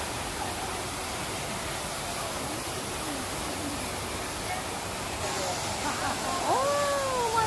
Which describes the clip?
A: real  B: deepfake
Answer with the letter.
A